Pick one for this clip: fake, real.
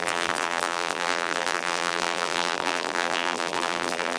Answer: fake